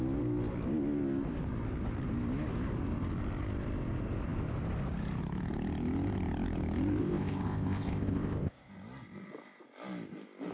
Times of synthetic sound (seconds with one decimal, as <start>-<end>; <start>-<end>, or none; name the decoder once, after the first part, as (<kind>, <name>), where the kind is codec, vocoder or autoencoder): 7.0-8.7 (codec, ZipCodec)